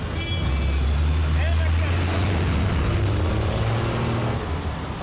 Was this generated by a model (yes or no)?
no